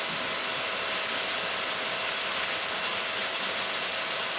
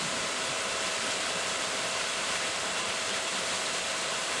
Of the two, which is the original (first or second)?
first